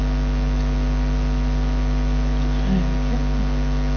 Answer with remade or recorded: recorded